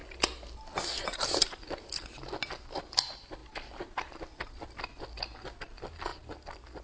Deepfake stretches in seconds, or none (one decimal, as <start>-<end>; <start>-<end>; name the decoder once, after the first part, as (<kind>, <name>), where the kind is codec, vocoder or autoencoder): none